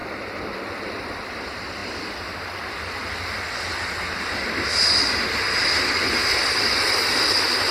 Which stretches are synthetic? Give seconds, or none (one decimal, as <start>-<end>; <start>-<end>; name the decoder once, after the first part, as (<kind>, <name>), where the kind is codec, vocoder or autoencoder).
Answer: 0.0-0.6 (vocoder, BigVGAN v2)